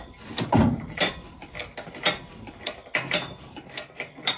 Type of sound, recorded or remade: remade